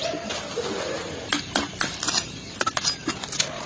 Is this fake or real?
real